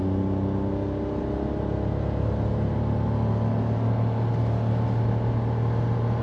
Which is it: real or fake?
real